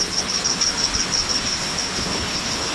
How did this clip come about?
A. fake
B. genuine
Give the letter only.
A